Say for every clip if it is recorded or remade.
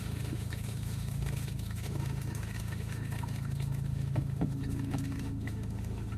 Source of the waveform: remade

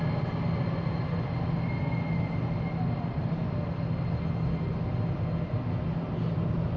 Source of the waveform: recorded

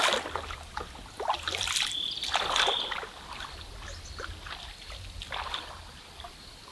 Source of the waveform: recorded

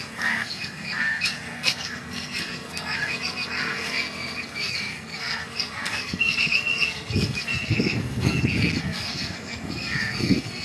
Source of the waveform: remade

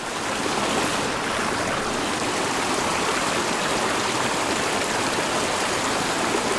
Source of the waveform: recorded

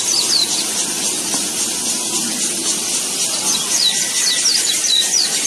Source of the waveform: recorded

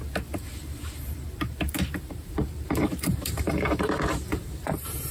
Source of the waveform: remade